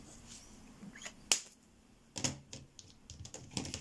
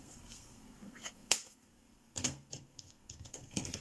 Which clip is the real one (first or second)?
first